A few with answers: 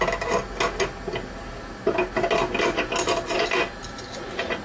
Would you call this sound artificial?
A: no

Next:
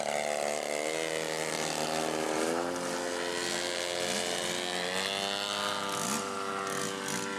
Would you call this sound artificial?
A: no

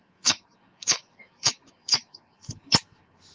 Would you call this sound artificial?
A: yes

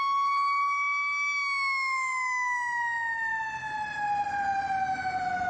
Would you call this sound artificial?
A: no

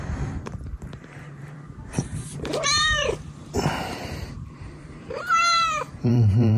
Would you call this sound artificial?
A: yes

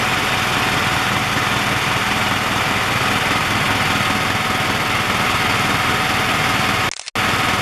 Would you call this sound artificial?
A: no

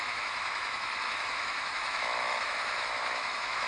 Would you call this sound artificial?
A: yes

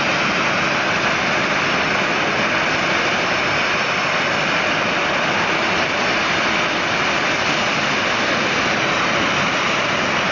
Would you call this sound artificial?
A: no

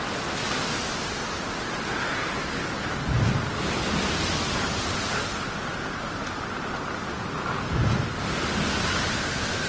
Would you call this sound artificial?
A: no